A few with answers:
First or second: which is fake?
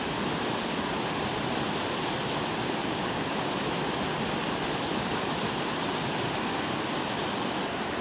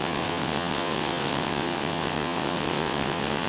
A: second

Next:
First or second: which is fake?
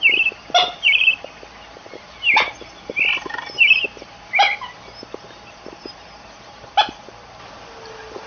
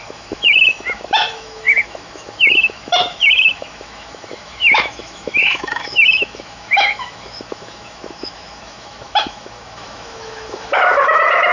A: second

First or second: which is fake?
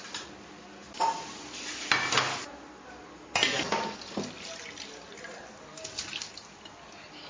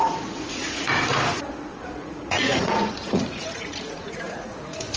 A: second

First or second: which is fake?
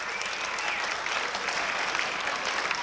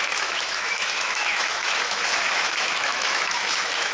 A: second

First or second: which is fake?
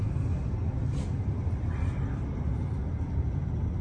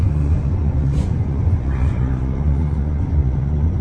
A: second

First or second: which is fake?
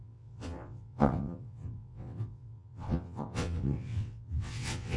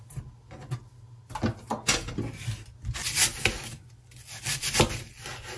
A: first